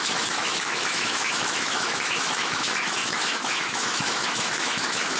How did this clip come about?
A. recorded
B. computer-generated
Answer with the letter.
B